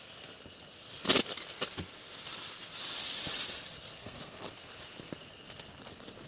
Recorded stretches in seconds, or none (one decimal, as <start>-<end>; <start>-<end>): 0.0-4.0; 4.5-6.3